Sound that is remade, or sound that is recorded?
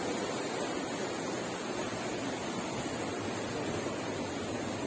recorded